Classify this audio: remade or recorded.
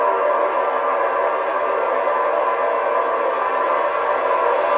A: recorded